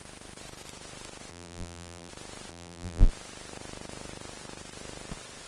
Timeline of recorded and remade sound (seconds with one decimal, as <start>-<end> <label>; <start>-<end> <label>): 0.0-1.3 recorded; 1.3-2.1 remade; 2.1-2.5 recorded; 2.5-3.1 remade; 3.1-5.5 recorded